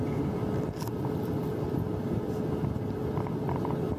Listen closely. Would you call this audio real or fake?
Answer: real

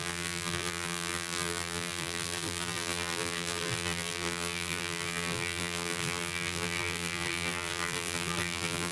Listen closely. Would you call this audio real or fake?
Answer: fake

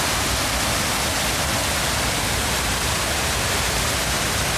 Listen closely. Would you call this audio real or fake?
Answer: real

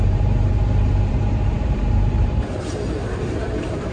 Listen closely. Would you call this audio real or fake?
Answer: fake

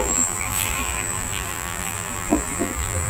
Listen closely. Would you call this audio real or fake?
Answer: fake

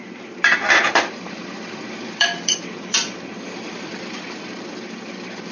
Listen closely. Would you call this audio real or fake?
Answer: fake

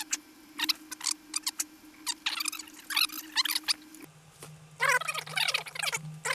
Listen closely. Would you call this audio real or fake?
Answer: real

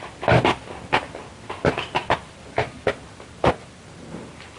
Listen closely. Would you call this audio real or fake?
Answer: fake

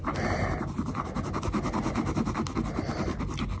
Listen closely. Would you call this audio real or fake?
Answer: real